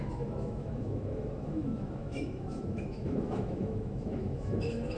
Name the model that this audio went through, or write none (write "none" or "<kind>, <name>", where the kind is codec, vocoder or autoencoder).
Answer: autoencoder, DAC-VAE